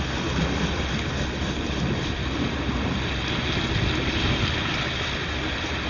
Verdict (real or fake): real